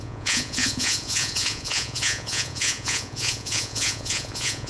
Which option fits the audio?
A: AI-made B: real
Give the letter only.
A